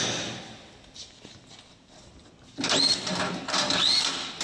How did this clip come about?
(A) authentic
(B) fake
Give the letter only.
A